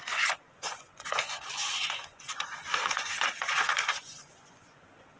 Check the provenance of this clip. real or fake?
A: fake